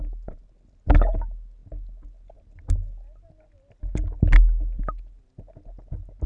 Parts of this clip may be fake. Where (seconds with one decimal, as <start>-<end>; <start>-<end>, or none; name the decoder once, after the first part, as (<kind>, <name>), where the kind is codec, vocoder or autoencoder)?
none